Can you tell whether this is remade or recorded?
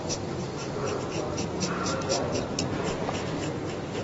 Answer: recorded